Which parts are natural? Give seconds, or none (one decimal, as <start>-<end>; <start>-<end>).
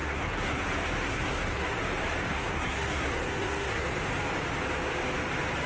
0.6-1.1; 1.8-2.3; 3.9-5.7